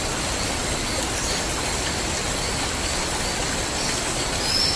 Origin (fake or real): real